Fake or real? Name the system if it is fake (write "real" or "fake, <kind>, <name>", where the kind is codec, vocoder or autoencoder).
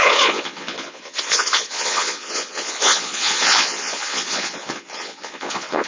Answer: fake, vocoder, Vocos